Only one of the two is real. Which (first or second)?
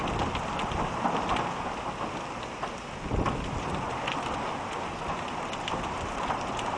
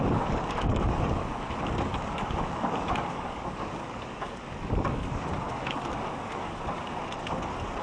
first